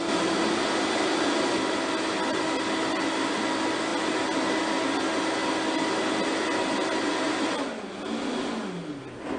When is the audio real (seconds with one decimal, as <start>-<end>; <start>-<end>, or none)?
0.0-9.4